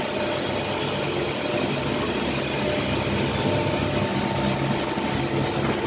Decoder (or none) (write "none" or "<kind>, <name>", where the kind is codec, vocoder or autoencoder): none